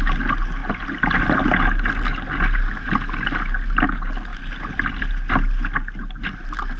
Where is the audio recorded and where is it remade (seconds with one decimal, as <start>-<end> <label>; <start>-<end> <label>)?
0.0-6.8 recorded

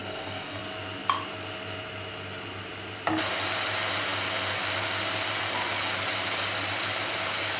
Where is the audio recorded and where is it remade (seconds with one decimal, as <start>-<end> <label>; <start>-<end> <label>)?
0.0-0.6 remade; 0.6-7.6 recorded

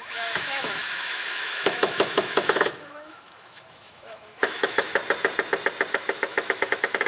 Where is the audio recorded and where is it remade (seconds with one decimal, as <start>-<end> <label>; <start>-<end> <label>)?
0.0-5.0 remade; 5.0-5.9 recorded; 5.9-7.1 remade

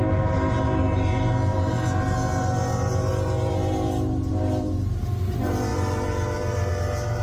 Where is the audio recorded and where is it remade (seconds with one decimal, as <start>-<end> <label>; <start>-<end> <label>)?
0.0-7.2 recorded

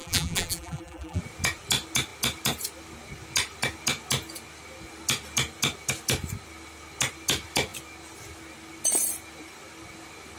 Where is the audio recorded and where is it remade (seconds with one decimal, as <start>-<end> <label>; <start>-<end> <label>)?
0.0-1.2 remade; 1.2-10.4 recorded